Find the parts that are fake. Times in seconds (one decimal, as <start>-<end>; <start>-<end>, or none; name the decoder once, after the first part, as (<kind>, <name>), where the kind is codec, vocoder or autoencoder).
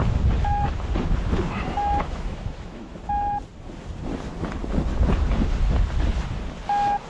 2.0-3.0 (autoencoder, DAC-VAE)